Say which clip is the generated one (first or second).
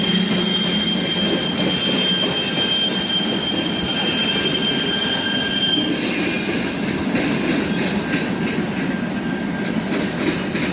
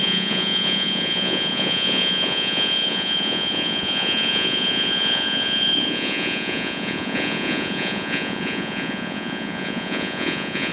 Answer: second